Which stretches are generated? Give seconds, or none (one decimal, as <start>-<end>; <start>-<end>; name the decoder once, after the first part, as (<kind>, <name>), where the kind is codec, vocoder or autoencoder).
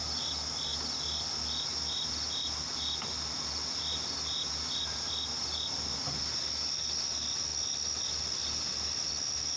none